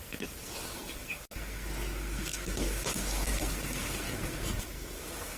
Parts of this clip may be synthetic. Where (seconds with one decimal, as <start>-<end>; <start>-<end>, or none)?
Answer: 0.0-5.4